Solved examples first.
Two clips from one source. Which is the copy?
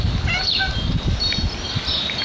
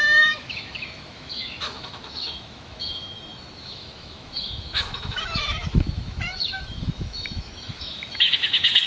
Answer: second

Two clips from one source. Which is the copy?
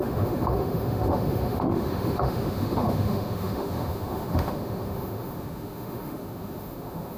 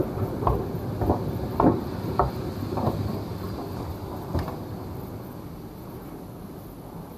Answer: first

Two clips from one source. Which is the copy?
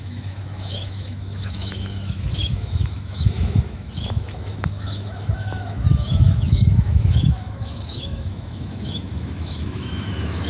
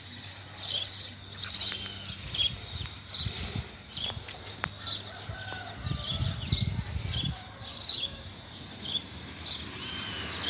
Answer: first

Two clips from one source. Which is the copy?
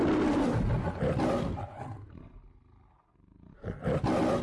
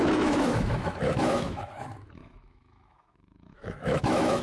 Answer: second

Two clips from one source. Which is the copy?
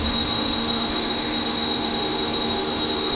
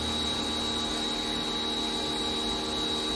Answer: first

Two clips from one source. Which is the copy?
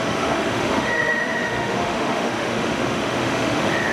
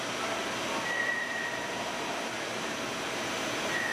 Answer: first